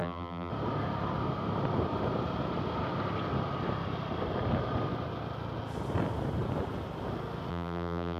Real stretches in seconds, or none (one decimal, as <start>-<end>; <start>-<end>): 0.5-7.5